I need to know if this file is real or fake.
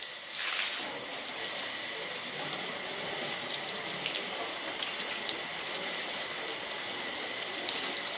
real